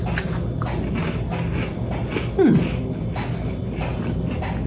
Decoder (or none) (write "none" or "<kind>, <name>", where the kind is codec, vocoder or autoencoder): none